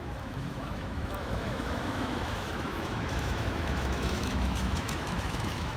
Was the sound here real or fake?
fake